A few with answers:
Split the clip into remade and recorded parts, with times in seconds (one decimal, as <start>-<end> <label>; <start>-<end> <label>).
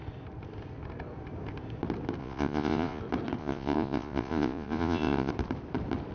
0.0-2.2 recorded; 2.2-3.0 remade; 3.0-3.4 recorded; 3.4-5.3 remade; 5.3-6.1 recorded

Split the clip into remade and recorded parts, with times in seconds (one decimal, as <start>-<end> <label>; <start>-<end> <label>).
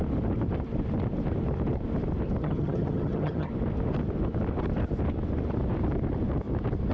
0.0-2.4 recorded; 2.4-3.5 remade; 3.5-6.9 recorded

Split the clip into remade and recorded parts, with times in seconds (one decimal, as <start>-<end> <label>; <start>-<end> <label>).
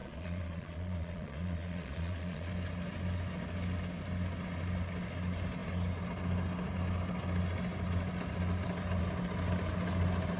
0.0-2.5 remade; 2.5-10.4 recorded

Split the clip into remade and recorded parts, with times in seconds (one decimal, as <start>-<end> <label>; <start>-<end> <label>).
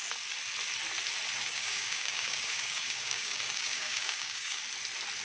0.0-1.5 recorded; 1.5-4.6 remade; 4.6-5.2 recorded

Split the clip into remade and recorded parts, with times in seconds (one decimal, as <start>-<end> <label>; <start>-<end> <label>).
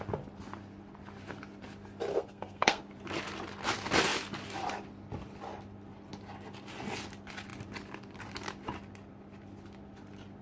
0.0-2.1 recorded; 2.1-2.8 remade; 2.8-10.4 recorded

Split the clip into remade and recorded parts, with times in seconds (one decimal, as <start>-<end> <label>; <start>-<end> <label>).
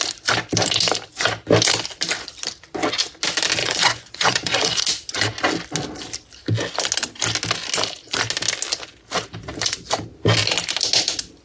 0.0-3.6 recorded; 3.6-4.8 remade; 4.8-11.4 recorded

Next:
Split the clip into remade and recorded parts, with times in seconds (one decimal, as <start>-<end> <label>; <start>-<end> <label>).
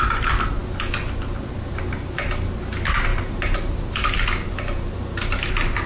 0.0-5.9 recorded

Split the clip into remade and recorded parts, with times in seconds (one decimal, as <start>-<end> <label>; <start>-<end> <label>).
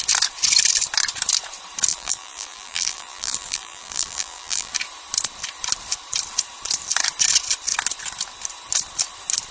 0.0-1.9 recorded; 1.9-4.7 remade; 4.7-9.5 recorded